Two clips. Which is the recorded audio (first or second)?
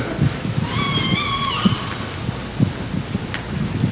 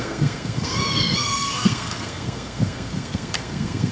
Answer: first